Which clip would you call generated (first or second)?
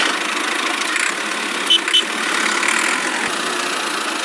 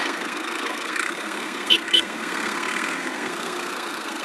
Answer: second